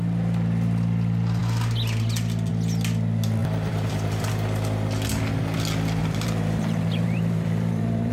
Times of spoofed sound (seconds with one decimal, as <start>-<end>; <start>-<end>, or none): 3.4-4.3; 6.0-8.1